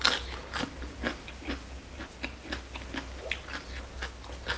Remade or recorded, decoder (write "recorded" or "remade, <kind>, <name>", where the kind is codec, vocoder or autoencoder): recorded